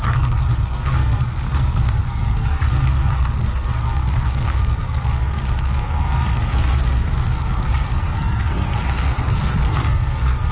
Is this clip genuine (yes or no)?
no